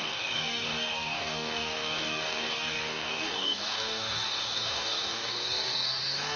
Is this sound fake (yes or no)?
yes